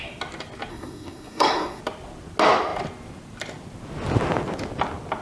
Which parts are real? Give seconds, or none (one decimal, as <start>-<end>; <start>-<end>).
0.0-0.7; 1.8-5.2